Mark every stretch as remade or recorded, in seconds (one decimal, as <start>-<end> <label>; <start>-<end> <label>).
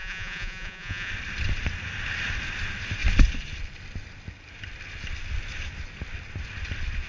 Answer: 0.0-1.1 remade; 1.1-7.1 recorded